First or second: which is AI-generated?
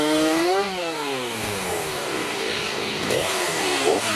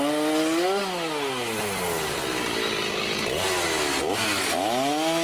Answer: first